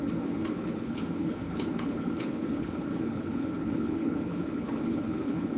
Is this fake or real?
fake